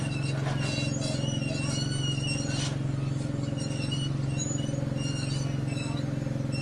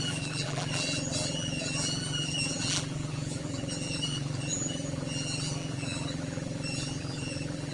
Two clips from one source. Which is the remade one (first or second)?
second